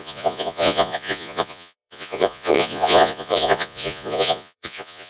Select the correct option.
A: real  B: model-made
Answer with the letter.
B